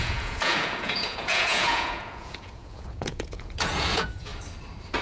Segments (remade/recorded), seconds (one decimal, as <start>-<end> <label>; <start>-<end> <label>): 0.0-4.3 remade; 4.3-5.0 recorded